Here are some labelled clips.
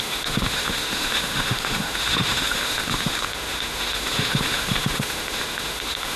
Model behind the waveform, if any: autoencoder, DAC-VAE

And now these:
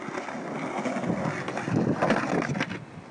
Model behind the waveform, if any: none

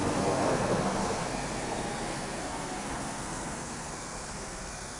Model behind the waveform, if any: codec, SNAC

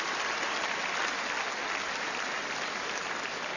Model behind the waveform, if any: none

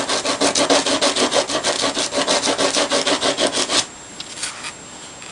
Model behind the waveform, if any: none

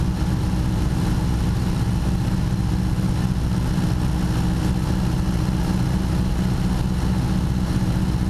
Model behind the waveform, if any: none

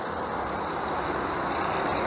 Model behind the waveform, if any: none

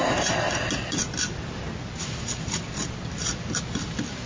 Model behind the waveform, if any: none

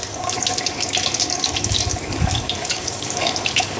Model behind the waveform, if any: codec, DAC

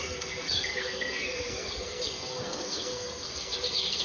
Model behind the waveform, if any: codec, SNAC